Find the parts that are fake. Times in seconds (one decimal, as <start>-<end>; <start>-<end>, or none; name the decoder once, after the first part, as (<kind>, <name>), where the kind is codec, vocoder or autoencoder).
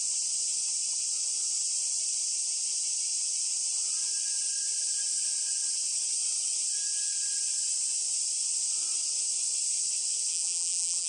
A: 10.3-11.1 (vocoder, BigVGAN v2)